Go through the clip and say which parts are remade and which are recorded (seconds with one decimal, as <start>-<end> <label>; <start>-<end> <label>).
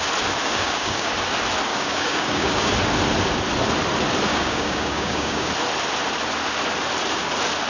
0.0-0.4 recorded; 0.4-1.1 remade; 1.1-1.7 recorded; 1.7-2.7 remade; 2.7-4.3 recorded; 4.3-5.5 remade; 5.5-7.7 recorded